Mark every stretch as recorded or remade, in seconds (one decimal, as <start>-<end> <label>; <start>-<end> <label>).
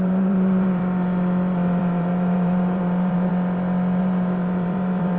0.0-0.8 remade; 0.8-1.8 recorded; 1.8-3.3 remade; 3.3-4.0 recorded; 4.0-5.2 remade